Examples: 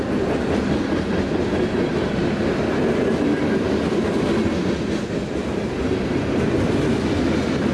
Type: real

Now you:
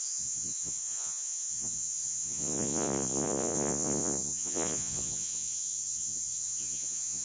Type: fake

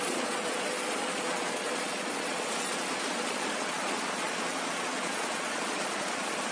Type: fake